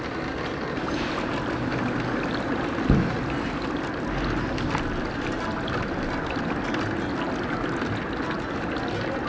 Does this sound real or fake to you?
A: real